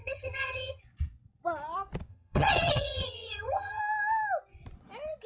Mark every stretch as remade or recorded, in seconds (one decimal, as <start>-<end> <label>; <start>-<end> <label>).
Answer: 0.0-0.8 remade; 0.8-2.1 recorded; 2.1-3.8 remade; 3.8-5.3 recorded